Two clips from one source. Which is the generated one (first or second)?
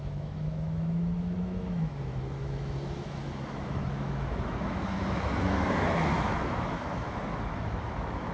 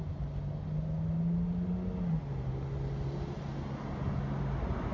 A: first